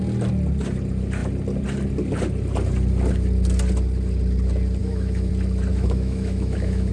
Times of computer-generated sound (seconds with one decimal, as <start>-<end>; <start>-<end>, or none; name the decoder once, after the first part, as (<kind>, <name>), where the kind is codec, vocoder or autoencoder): 4.8-5.3 (autoencoder, DAC-VAE); 5.7-6.9